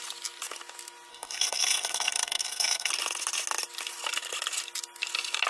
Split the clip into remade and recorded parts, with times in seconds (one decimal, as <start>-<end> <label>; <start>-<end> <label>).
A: 0.0-1.1 recorded; 1.1-2.9 remade; 2.9-5.5 recorded